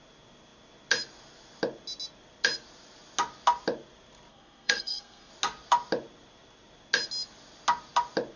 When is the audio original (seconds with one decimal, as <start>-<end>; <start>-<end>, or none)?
0.0-4.3; 5.3-8.4